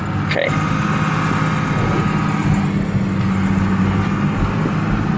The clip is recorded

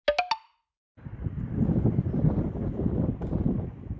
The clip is recorded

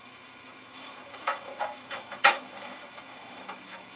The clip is remade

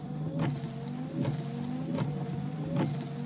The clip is recorded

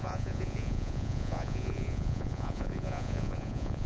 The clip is remade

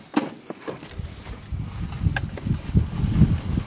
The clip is recorded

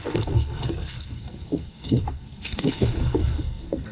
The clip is remade